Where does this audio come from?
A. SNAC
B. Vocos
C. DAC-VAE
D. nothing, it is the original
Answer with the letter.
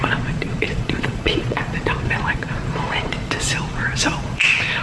B